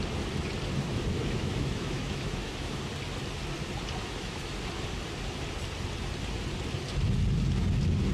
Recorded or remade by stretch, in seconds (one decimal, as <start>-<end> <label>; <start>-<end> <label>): 0.0-1.1 recorded; 1.1-2.8 remade; 2.8-4.0 recorded; 4.0-4.6 remade; 4.6-8.1 recorded